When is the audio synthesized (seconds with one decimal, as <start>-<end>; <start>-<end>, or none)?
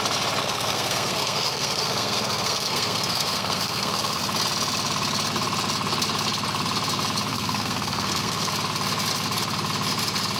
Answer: 0.4-4.2; 7.3-8.5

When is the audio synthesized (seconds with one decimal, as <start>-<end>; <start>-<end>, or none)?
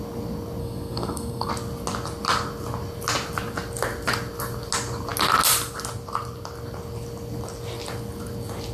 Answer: 0.6-1.5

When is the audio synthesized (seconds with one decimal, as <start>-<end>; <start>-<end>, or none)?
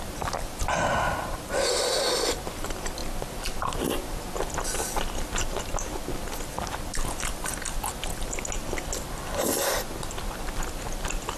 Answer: none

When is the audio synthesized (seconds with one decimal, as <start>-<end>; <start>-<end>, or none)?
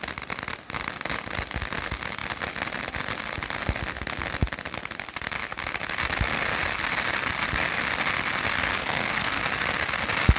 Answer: 8.7-9.4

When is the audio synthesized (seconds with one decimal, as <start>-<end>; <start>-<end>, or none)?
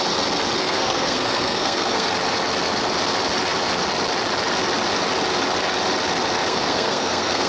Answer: 0.6-2.1; 6.5-7.5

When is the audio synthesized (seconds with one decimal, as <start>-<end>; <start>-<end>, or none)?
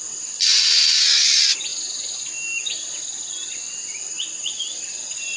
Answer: none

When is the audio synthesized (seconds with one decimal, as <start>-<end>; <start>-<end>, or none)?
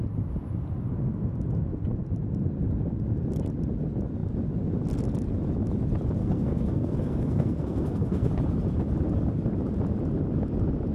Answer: 6.2-8.3